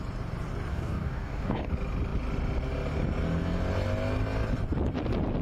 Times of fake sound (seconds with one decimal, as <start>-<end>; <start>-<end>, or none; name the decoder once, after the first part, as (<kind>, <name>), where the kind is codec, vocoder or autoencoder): 0.7-1.7 (codec, DAC)